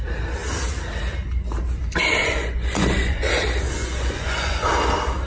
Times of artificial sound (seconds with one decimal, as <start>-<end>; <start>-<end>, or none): 2.2-3.3; 3.8-4.7